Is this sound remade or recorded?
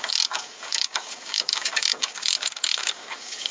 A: remade